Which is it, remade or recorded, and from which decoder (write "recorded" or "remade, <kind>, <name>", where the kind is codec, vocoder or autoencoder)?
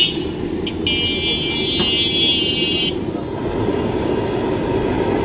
recorded